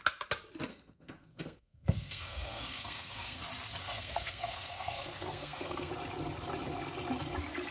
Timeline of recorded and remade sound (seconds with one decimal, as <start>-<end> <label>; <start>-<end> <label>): 0.0-0.7 recorded; 0.7-3.4 remade; 3.4-3.8 recorded; 3.8-5.9 remade; 5.9-7.7 recorded